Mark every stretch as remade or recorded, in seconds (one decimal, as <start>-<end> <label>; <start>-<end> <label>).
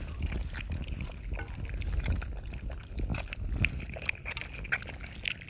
0.0-5.5 recorded